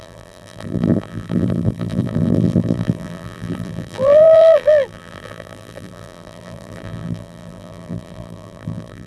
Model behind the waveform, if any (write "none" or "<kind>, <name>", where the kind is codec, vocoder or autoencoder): vocoder, BigVGAN v2